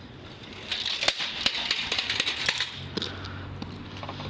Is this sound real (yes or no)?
yes